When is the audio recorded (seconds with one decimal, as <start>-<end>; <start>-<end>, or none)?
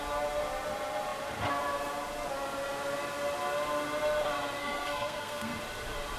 0.0-4.6; 5.6-6.2